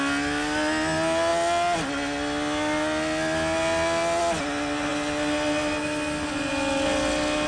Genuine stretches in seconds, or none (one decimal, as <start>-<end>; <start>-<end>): 0.0-7.5